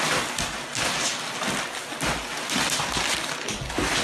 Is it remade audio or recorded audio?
recorded